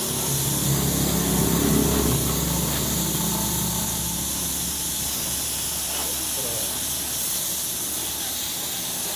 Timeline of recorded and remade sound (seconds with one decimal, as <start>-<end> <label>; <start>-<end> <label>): 0.0-9.2 recorded

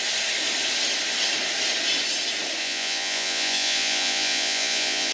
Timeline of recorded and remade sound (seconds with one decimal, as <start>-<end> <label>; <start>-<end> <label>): 0.0-2.6 recorded; 2.6-5.1 remade

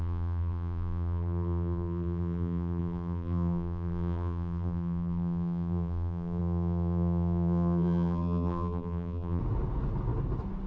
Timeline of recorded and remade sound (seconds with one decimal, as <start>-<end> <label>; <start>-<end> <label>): 0.0-9.4 remade; 9.4-10.7 recorded

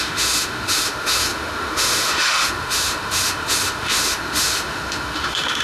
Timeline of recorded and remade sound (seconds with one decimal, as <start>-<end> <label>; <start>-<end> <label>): 0.0-5.6 remade

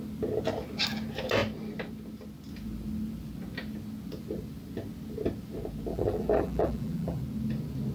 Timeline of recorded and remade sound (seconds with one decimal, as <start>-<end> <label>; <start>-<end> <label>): 0.0-5.9 recorded; 5.9-7.2 remade; 7.2-7.9 recorded

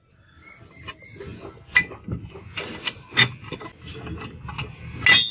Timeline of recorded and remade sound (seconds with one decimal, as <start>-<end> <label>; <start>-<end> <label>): 0.0-5.3 recorded

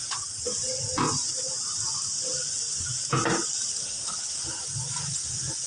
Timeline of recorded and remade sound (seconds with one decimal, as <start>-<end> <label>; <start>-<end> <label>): 0.0-3.8 recorded; 3.8-4.4 remade; 4.4-5.7 recorded